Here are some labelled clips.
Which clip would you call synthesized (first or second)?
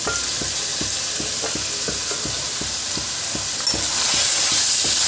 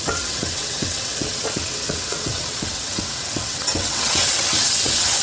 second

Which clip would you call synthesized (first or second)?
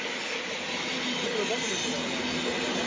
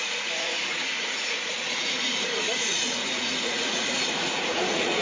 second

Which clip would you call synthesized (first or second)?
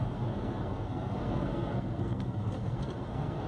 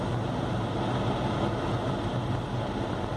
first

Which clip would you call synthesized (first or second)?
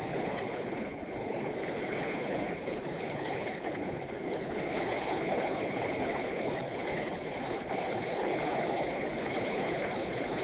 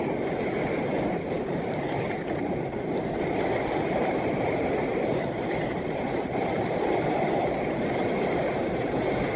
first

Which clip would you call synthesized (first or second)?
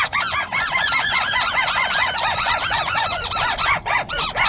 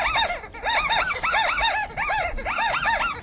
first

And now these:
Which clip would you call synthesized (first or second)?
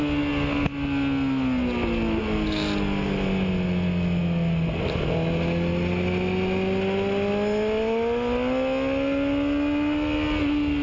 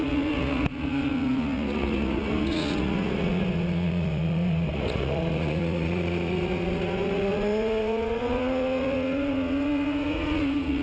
second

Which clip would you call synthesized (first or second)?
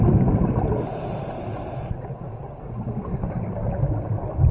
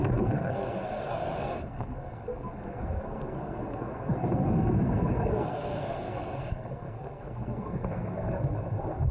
second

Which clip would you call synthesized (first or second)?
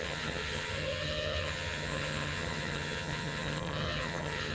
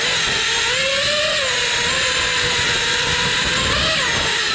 first